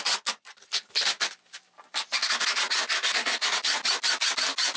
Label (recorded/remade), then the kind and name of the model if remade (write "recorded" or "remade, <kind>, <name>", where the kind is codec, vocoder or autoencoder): remade, vocoder, BigVGAN v2